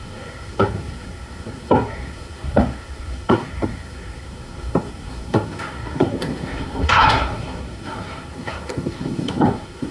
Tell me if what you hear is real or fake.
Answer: fake